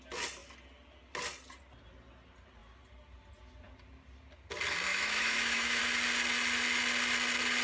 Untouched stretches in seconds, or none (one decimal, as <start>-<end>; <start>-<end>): 0.0-4.9; 5.8-7.6